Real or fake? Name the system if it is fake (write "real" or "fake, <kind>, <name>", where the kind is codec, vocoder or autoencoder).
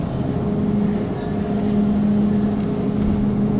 real